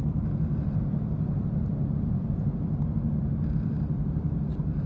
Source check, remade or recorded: remade